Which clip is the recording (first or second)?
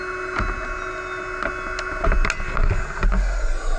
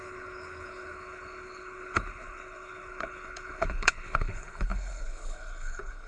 first